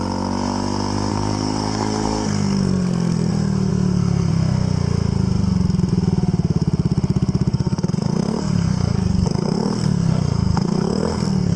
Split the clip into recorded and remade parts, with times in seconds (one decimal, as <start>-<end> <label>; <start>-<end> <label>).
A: 0.0-1.1 recorded; 1.1-3.3 remade; 3.3-3.7 recorded; 3.7-4.3 remade; 4.3-7.5 recorded; 7.5-11.6 remade